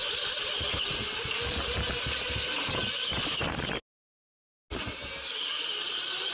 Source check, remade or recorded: recorded